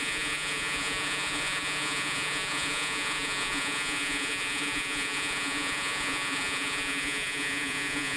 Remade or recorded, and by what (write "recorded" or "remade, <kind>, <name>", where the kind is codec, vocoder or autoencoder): remade, vocoder, Vocos